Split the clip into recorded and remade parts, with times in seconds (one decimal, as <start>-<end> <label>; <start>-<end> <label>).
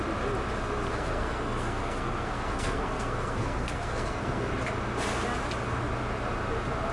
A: 0.0-0.9 recorded; 0.9-4.5 remade; 4.5-6.9 recorded